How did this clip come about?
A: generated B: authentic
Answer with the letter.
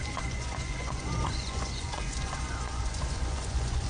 A